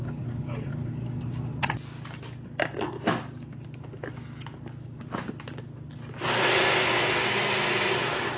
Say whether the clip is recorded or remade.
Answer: recorded